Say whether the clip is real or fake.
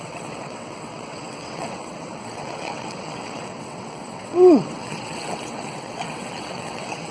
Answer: fake